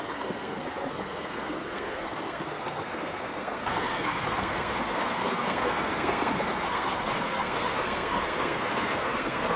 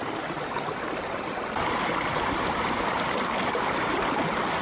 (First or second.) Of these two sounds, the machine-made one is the first